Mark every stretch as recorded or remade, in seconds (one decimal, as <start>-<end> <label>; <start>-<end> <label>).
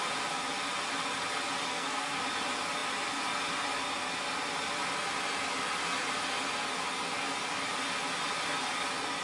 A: 0.0-1.7 recorded; 1.7-2.2 remade; 2.2-9.2 recorded